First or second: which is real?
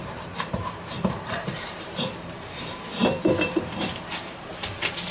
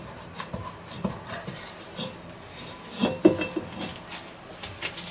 second